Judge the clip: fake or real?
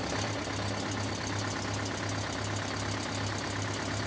real